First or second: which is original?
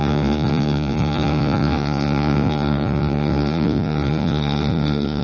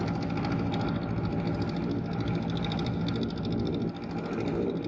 second